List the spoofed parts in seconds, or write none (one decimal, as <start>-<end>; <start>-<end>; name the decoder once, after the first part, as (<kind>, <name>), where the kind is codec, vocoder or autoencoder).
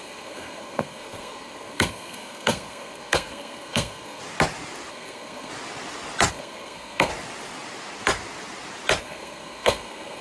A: 0.0-4.2 (codec, SNAC); 4.9-5.5; 6.3-7.1; 9.0-10.2